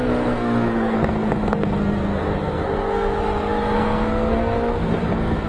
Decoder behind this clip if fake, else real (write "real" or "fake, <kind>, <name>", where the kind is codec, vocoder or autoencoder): fake, codec, SNAC